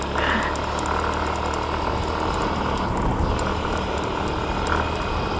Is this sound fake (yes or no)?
no